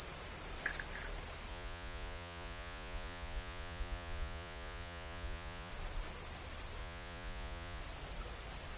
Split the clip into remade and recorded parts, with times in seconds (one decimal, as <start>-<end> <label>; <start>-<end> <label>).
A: 0.0-1.5 recorded; 1.5-5.7 remade; 5.7-6.8 recorded; 6.8-7.8 remade; 7.8-8.8 recorded